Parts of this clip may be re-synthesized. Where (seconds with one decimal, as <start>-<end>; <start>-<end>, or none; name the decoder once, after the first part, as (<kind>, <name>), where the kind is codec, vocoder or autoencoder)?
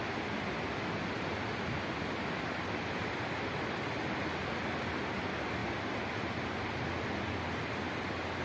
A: none